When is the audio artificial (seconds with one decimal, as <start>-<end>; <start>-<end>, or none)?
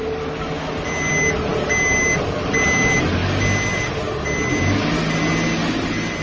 none